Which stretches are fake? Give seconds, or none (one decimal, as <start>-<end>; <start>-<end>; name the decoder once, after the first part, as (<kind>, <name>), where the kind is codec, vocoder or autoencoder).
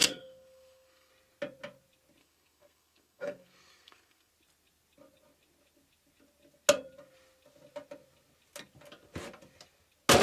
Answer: 0.0-1.1 (codec, SNAC); 2.2-4.3